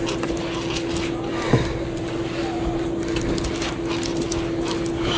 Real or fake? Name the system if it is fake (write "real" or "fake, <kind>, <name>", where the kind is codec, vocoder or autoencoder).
real